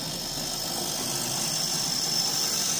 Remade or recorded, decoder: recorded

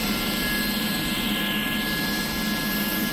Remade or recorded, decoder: recorded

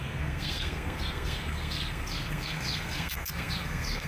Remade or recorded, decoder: remade, codec, SNAC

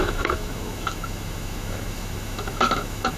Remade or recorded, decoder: remade, autoencoder, DAC-VAE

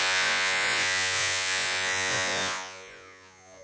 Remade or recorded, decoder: remade, vocoder, Vocos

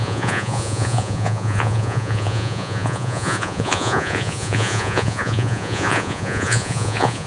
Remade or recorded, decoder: remade, vocoder, Vocos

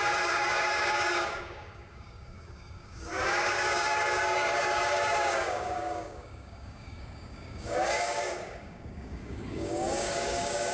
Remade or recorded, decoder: remade, codec, DAC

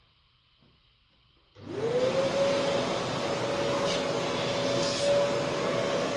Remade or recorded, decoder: recorded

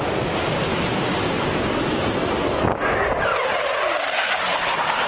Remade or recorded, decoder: recorded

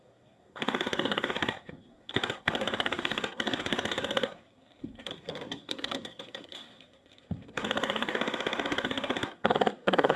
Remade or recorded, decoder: remade, codec, SNAC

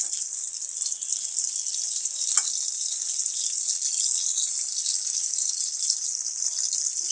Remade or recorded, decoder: recorded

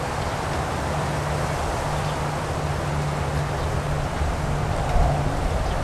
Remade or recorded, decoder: recorded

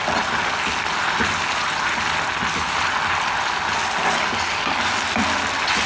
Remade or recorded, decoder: recorded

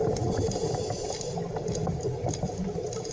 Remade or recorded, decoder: recorded